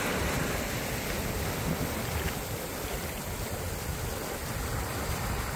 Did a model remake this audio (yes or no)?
no